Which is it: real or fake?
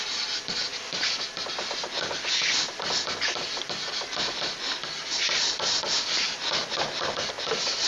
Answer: real